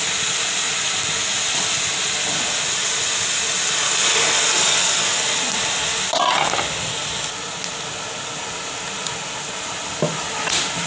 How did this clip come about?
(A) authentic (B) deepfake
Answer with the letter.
A